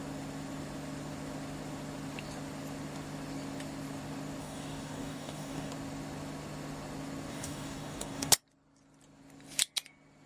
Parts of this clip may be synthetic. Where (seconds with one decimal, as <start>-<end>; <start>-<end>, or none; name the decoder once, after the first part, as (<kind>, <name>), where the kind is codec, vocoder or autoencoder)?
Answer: 4.4-5.7 (codec, DAC); 7.3-8.3